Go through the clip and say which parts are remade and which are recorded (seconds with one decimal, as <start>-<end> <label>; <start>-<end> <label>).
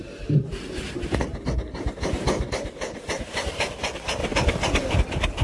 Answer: 0.0-0.8 remade; 0.8-1.3 recorded; 1.3-3.7 remade; 3.7-4.2 recorded; 4.2-5.0 remade; 5.0-5.4 recorded